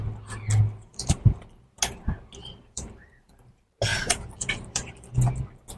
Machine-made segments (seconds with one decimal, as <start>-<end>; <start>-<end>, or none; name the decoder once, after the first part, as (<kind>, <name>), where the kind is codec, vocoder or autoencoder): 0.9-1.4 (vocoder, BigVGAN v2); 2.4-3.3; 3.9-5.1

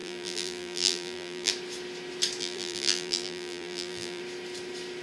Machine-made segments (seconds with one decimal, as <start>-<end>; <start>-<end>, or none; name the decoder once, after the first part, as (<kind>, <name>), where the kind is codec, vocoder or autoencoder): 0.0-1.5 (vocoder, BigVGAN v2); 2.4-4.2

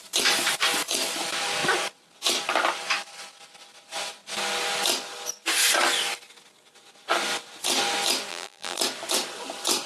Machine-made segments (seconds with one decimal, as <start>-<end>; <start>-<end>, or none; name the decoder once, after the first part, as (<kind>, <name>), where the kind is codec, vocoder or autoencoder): 8.3-8.8 (vocoder, BigVGAN v2)